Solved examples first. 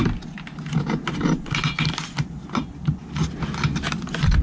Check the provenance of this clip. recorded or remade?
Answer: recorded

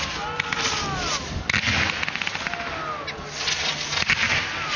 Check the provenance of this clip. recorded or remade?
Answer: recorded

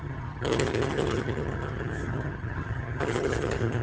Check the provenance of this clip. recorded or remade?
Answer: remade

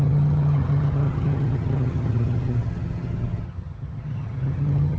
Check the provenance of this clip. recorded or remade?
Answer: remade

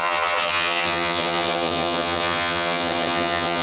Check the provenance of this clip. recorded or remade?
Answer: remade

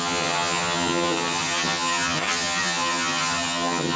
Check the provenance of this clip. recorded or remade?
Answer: remade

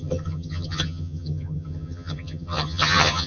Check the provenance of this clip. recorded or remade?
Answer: remade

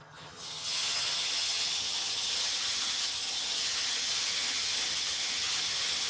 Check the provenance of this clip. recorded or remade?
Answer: remade